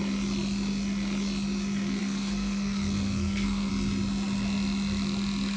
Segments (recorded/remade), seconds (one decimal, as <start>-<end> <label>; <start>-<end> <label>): 0.0-2.0 recorded; 2.0-3.7 remade; 3.7-5.6 recorded